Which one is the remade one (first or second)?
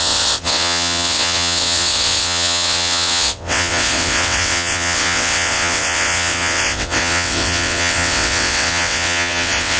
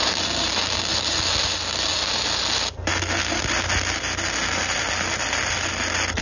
first